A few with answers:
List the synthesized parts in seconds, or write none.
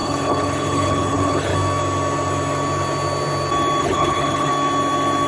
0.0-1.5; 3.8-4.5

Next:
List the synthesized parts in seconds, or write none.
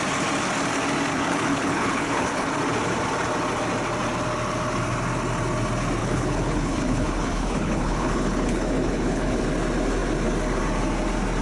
1.1-2.5; 6.0-9.4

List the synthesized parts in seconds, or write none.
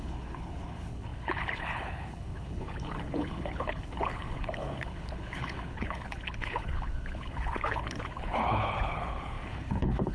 0.0-10.1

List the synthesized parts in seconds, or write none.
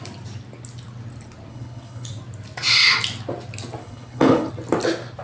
1.5-2.1; 3.8-4.5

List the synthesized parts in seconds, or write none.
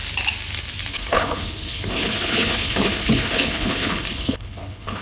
0.9-5.0